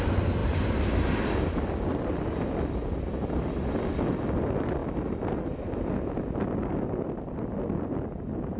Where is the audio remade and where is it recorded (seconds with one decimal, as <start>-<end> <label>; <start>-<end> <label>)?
0.0-8.6 recorded